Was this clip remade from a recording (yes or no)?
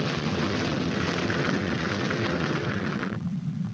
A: yes